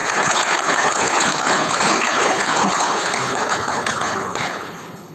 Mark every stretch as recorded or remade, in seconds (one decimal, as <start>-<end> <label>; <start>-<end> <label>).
0.0-5.1 remade